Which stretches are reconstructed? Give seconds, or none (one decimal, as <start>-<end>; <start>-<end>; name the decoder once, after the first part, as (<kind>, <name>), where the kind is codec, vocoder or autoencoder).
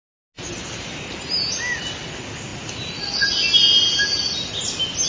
none